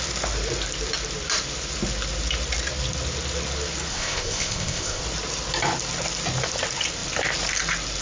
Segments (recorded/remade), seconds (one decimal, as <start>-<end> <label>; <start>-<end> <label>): 0.0-3.9 recorded; 3.9-5.0 remade; 5.0-8.0 recorded